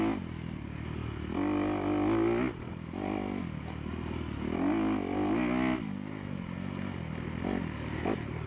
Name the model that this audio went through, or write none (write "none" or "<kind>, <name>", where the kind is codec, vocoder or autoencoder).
none